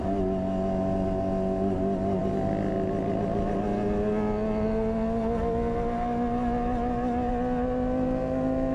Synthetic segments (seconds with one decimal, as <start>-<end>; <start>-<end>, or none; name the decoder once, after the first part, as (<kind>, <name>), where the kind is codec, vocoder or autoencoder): none